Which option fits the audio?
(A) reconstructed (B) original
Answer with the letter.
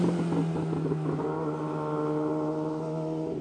B